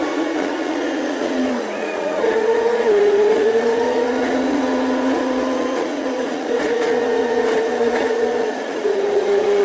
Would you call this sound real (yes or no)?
no